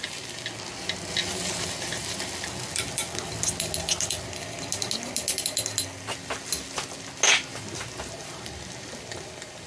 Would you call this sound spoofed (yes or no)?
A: no